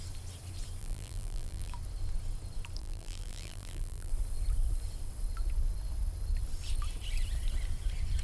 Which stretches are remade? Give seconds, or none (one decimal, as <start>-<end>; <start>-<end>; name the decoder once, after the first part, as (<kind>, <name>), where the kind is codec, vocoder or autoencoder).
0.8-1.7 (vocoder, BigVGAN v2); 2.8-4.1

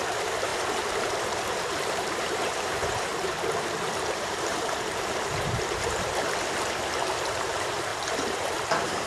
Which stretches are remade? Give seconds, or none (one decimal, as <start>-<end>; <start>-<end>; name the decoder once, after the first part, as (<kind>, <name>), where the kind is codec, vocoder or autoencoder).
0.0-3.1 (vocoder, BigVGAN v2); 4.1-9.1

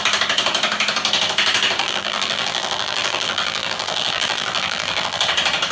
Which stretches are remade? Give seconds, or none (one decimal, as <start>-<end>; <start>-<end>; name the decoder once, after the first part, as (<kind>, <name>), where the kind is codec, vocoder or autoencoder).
1.8-5.2 (vocoder, BigVGAN v2)

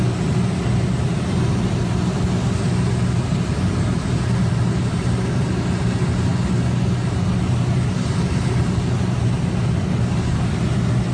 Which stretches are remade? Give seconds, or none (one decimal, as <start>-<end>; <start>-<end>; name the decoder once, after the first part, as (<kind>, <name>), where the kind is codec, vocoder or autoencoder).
none